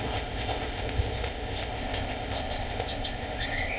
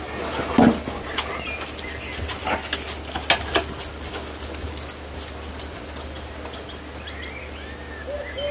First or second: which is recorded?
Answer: second